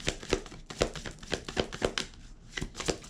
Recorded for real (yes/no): yes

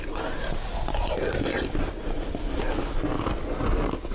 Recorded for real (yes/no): yes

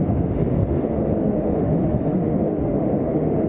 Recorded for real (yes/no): no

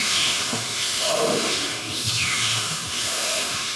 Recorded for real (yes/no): no